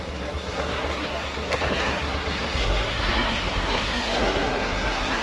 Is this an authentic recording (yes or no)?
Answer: no